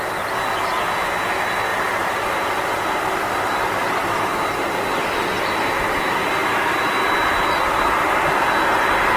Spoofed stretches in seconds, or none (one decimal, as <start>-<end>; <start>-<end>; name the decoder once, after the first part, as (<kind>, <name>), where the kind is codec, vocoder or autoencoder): none